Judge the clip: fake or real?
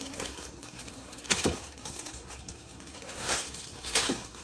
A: fake